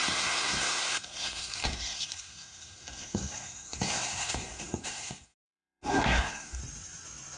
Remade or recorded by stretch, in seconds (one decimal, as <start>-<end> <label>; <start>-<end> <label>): 0.0-6.6 remade; 6.6-7.4 recorded